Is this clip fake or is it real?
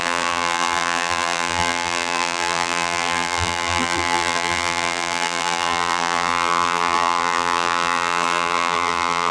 fake